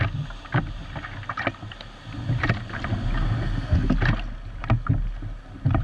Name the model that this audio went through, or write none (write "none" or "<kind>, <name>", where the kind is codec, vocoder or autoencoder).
none